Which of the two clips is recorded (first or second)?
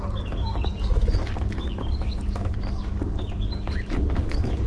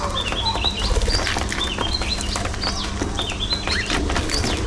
second